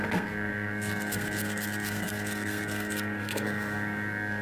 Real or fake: fake